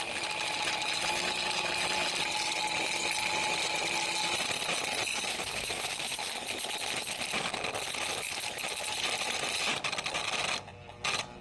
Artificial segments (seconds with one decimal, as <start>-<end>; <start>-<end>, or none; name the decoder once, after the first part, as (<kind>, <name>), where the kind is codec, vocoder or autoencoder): 5.1-6.3 (autoencoder, DAC-VAE)